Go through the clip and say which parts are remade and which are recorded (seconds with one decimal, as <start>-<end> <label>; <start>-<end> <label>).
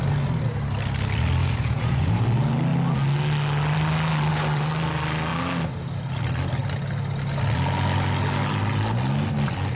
0.0-1.4 recorded; 1.4-2.2 remade; 2.2-9.7 recorded